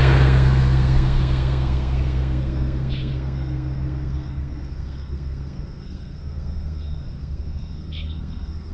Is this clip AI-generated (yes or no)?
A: yes